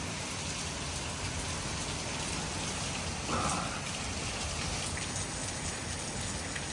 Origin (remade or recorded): recorded